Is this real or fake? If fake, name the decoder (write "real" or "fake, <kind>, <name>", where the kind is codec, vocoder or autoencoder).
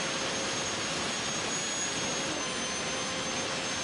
real